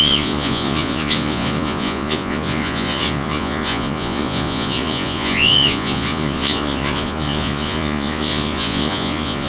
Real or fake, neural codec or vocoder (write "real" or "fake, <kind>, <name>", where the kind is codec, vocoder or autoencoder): fake, vocoder, Vocos